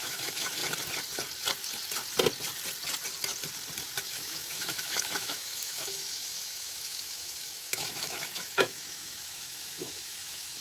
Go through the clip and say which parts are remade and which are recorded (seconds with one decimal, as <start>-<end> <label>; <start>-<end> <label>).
0.0-0.6 remade; 0.6-4.0 recorded; 4.0-10.6 remade